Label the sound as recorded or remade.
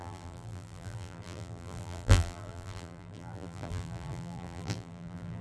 remade